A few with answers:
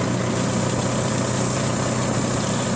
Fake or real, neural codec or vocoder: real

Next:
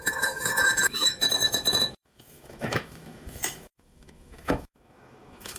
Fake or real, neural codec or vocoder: fake, autoencoder, DAC-VAE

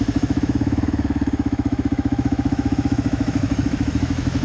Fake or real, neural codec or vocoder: fake, autoencoder, DAC-VAE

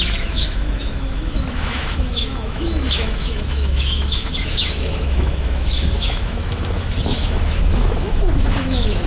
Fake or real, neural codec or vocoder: fake, autoencoder, DAC-VAE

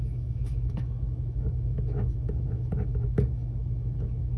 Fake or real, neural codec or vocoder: fake, autoencoder, DAC-VAE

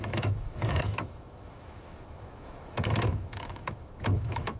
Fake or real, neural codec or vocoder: fake, autoencoder, DAC-VAE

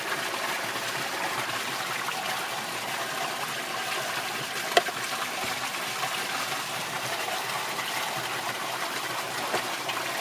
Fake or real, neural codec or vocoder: real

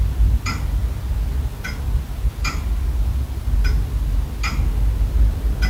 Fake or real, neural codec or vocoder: real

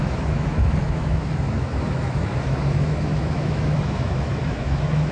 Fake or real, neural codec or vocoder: fake, autoencoder, DAC-VAE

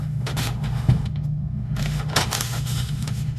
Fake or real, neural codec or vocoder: fake, autoencoder, DAC-VAE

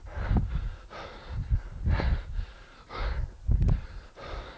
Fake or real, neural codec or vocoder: real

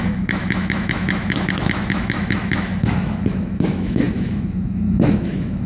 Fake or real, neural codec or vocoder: fake, autoencoder, DAC-VAE